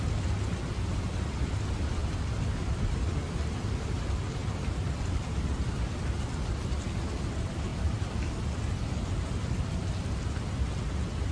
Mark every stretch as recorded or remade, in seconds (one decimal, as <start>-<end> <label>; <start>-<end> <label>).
0.0-2.0 recorded; 2.0-3.8 remade; 3.8-4.4 recorded; 4.4-6.5 remade; 6.5-11.3 recorded